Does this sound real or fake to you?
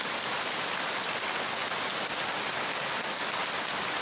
fake